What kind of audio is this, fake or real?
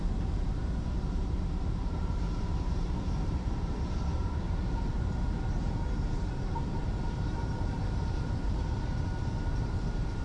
fake